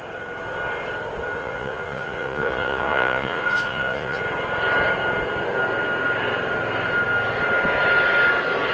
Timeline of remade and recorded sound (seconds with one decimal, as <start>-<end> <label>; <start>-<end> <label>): 0.0-1.4 recorded; 1.4-4.2 remade; 4.2-8.7 recorded